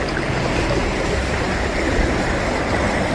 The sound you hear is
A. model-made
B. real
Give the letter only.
B